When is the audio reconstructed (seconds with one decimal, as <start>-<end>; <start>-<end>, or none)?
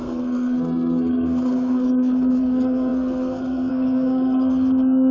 0.0-5.1